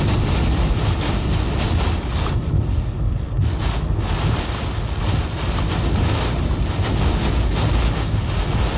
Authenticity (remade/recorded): recorded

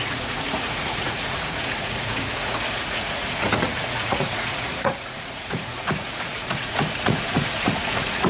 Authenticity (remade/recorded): remade